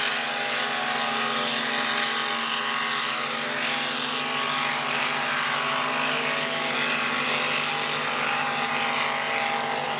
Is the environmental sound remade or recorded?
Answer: recorded